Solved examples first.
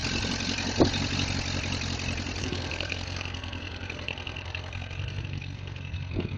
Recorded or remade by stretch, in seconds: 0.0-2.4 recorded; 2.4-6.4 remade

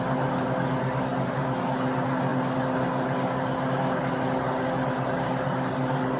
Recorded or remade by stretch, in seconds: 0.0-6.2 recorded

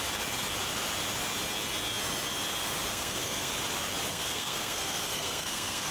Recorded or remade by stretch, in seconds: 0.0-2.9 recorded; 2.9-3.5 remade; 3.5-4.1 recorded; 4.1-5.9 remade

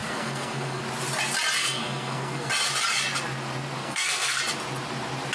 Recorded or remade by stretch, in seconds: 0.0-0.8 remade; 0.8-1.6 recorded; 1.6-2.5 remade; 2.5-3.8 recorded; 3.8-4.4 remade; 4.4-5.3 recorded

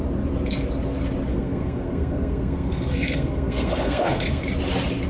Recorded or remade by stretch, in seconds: 0.0-1.3 recorded; 1.3-4.4 remade; 4.4-5.1 recorded

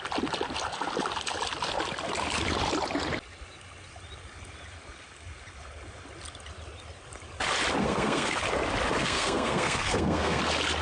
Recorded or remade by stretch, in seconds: 0.0-7.8 recorded; 7.8-8.4 remade; 8.4-9.0 recorded; 9.0-10.4 remade; 10.4-10.8 recorded